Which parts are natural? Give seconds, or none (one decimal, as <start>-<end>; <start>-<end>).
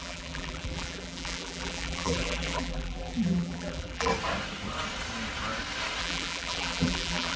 4.1-6.0